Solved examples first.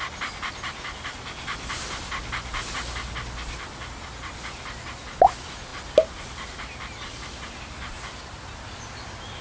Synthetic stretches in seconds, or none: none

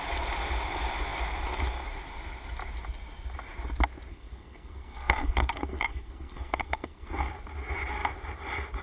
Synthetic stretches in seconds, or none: 4.1-7.3 (codec, SNAC)

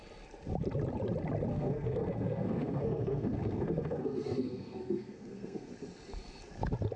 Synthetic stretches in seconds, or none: 1.5-5.7 (codec, SNAC)

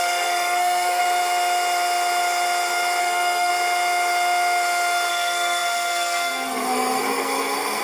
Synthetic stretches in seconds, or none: 0.0-1.0 (codec, SNAC); 3.0-3.5; 5.1-7.8

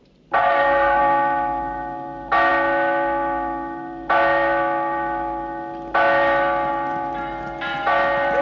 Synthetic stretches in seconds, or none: 0.4-1.0 (codec, SNAC)